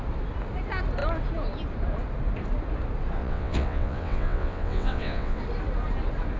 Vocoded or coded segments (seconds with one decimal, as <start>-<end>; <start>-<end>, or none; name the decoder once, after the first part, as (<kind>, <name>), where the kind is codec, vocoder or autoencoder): 3.2-5.4 (vocoder, WaveNeXt)